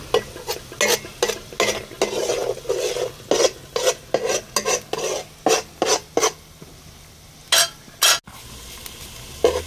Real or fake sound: real